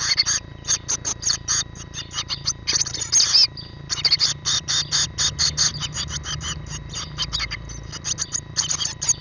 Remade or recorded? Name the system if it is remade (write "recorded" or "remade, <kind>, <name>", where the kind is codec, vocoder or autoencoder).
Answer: recorded